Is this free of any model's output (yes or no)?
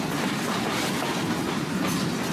yes